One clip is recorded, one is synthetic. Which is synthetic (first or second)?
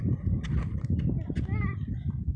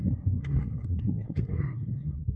second